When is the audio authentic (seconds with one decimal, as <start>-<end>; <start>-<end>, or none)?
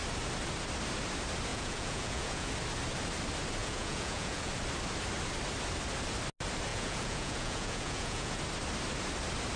0.0-1.5; 2.5-3.6; 4.5-6.7; 8.4-9.6